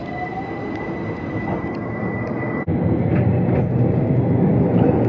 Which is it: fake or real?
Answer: real